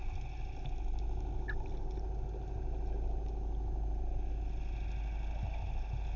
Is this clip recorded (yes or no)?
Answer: yes